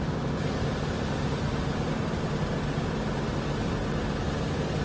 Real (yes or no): yes